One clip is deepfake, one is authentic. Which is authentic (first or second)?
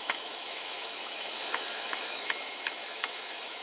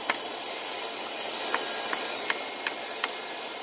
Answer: second